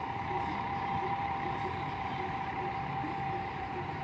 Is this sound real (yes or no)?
no